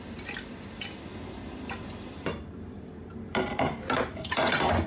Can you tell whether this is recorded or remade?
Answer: recorded